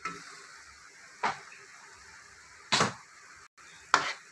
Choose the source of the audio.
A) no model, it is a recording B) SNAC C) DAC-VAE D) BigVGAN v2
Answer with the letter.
A